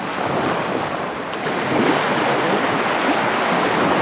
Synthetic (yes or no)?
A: no